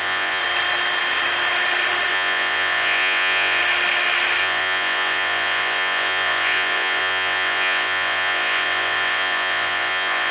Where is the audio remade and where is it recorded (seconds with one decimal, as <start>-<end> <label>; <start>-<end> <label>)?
0.0-0.4 remade; 0.4-2.1 recorded; 2.1-3.6 remade; 3.6-4.4 recorded; 4.4-10.3 remade